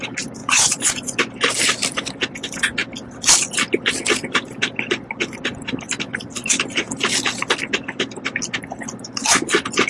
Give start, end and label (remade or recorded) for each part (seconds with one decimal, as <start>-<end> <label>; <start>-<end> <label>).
0.0-0.4 recorded; 0.4-1.2 remade; 1.2-9.9 recorded